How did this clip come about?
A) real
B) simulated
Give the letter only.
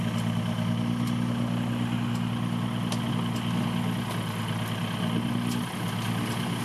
A